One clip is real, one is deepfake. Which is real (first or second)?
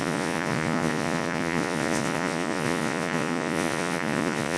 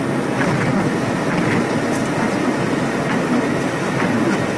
second